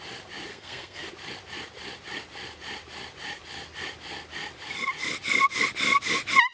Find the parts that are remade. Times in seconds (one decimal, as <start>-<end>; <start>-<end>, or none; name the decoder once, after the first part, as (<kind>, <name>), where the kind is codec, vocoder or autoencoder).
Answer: 0.5-1.1 (codec, SNAC)